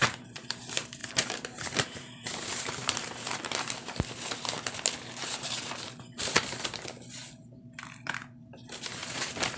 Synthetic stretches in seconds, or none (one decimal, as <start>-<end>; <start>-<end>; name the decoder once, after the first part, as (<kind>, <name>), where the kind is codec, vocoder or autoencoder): 0.0-0.6 (vocoder, BigVGAN v2); 1.0-3.7; 9.0-9.6